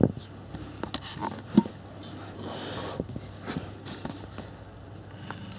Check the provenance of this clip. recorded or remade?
recorded